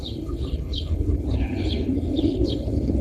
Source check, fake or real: fake